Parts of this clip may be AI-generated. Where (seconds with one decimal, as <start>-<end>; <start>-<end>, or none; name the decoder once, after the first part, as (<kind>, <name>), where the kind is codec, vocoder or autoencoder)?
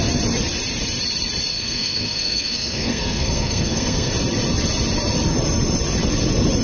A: 1.5-4.1 (codec, SNAC)